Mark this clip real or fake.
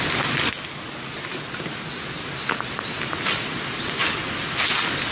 real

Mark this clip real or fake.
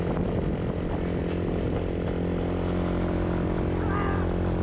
real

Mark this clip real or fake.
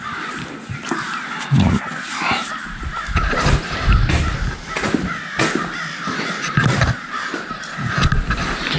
real